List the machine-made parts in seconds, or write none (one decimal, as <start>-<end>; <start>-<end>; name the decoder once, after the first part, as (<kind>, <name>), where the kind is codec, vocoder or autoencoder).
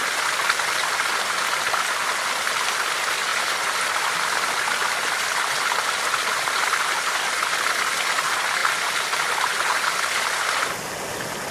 8.6-9.3 (vocoder, BigVGAN v2)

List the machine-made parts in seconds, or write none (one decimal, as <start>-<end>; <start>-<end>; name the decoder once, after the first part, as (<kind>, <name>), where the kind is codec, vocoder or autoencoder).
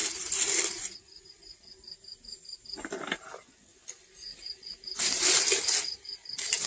4.3-5.3 (vocoder, BigVGAN v2)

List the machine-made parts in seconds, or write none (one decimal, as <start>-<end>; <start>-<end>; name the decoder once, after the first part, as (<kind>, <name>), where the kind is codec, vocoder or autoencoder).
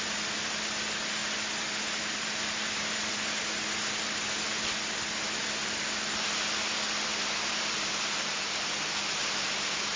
none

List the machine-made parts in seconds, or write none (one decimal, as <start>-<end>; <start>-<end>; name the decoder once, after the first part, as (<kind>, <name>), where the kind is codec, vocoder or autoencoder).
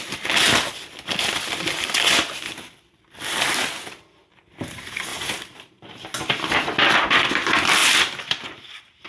5.1-5.7 (vocoder, BigVGAN v2); 7.8-9.1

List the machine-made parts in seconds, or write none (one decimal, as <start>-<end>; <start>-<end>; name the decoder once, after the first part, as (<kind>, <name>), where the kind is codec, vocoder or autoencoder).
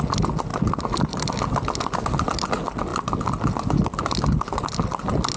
0.5-2.5 (vocoder, BigVGAN v2)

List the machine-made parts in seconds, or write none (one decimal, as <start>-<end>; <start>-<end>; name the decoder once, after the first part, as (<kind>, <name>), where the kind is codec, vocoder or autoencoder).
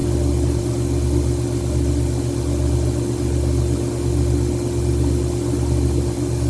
none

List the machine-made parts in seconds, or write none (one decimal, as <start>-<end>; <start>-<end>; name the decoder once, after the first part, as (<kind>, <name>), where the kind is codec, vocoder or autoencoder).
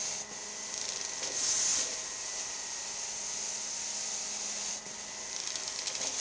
none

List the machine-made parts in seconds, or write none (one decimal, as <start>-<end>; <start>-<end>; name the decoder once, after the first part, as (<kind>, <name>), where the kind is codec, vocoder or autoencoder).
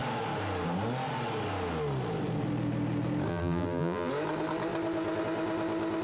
3.3-4.1 (vocoder, BigVGAN v2)